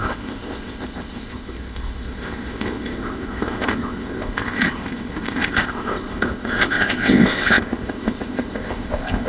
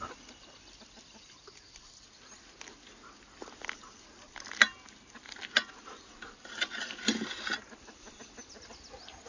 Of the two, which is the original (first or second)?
second